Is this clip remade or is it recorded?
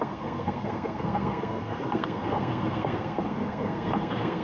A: remade